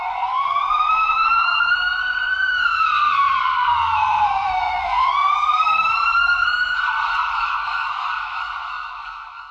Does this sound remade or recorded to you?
remade